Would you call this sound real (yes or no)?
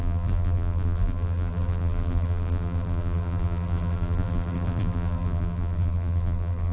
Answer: no